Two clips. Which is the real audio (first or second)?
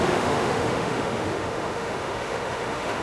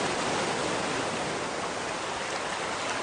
second